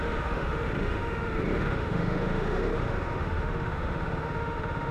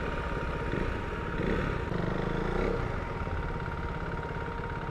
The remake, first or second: first